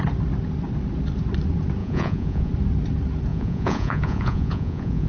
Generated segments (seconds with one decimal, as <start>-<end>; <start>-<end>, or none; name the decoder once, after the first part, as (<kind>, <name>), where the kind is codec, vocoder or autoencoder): 1.8-2.5 (vocoder, Vocos); 3.3-5.1